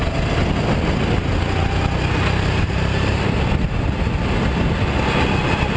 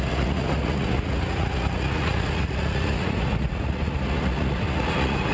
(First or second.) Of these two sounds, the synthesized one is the second